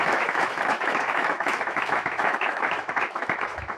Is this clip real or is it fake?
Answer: fake